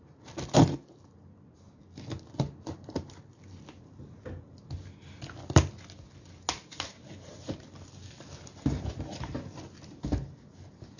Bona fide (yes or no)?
yes